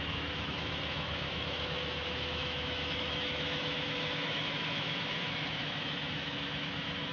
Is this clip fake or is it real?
fake